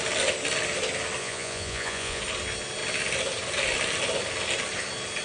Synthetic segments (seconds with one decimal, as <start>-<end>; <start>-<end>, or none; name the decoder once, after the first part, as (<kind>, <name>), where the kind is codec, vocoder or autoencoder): 1.2-2.2 (vocoder, Vocos)